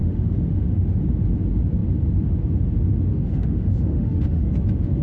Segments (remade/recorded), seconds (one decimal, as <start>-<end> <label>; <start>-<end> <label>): 0.0-1.0 remade; 1.0-3.1 recorded; 3.1-4.5 remade; 4.5-5.0 recorded